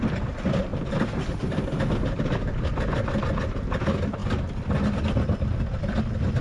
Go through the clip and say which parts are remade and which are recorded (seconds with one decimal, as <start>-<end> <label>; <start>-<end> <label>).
0.0-6.4 recorded